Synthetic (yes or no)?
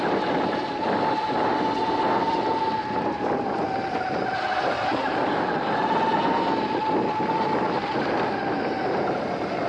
no